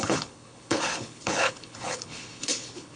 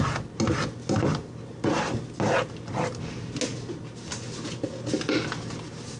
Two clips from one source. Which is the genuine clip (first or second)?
second